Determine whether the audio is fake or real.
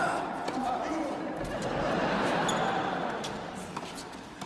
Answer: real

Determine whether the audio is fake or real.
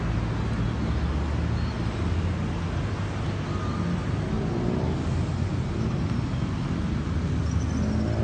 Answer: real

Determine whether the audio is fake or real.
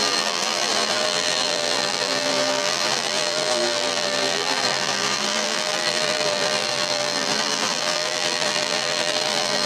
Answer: fake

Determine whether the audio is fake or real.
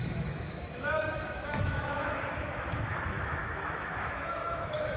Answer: fake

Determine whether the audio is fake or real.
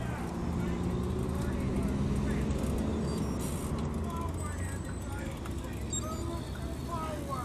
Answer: real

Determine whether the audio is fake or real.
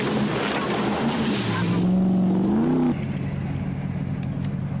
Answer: real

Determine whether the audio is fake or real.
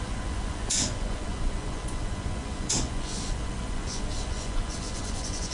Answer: fake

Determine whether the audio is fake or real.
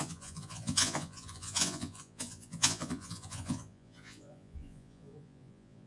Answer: fake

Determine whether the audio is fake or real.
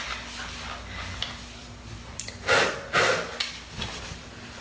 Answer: real